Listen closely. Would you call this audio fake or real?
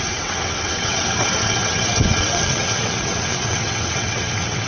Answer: fake